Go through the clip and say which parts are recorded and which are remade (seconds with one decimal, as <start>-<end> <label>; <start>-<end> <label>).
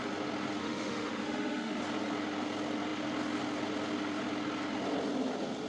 0.0-0.6 recorded; 0.6-1.8 remade; 1.8-5.7 recorded